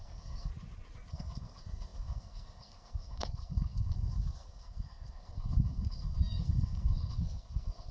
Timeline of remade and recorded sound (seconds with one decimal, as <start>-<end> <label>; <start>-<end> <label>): 0.0-0.5 remade; 0.5-1.1 recorded; 1.1-7.9 remade